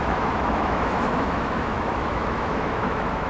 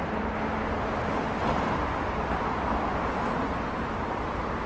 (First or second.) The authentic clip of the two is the second